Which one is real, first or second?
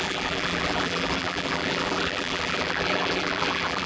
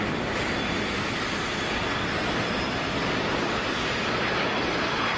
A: second